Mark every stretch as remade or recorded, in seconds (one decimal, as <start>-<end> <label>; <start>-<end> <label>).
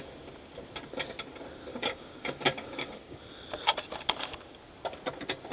0.0-1.7 recorded; 1.7-3.2 remade; 3.2-5.5 recorded